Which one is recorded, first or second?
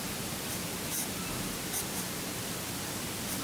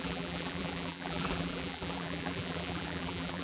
first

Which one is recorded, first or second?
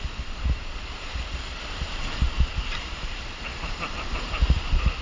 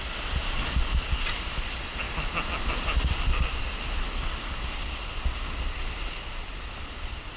second